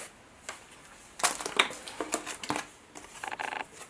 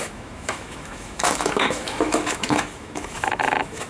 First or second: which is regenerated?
second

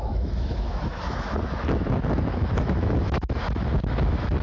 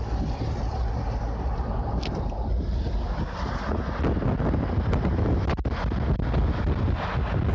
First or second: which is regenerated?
first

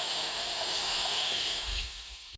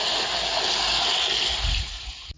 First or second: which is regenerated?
first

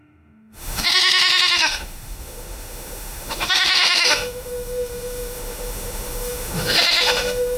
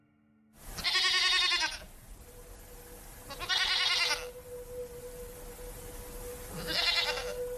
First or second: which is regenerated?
first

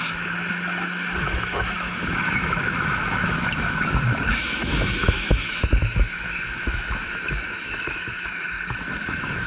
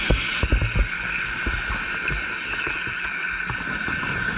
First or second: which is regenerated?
first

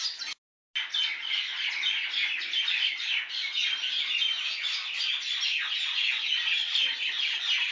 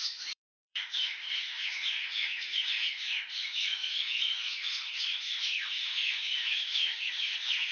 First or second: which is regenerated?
second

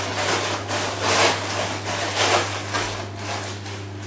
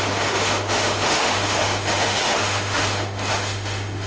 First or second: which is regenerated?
second